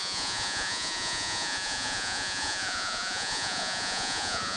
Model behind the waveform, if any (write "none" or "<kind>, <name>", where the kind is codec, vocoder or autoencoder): vocoder, Vocos